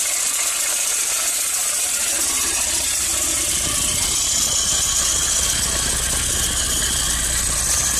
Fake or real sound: real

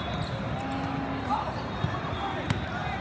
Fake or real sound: real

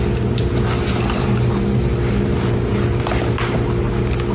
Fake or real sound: real